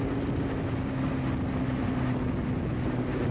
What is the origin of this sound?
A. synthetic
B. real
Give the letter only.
B